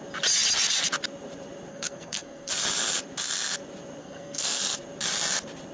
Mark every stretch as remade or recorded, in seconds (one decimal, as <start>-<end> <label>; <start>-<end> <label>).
0.0-1.7 recorded; 1.7-2.5 remade; 2.5-4.0 recorded; 4.0-4.6 remade; 4.6-5.7 recorded